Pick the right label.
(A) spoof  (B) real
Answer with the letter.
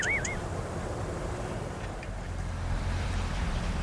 A